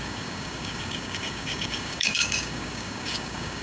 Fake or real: fake